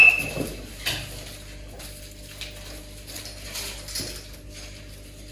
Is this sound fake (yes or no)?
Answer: no